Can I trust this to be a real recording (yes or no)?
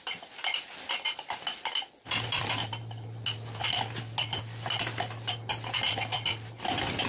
yes